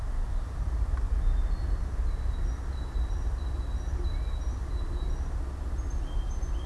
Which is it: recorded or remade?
recorded